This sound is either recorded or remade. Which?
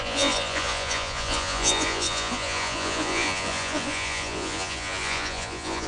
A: remade